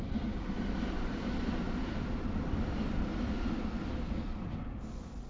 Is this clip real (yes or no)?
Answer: yes